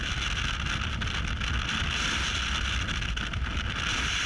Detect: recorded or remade recorded